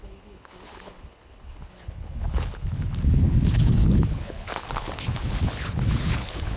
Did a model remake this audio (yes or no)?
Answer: yes